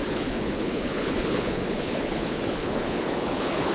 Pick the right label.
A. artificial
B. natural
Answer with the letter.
A